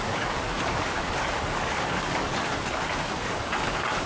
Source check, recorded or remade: remade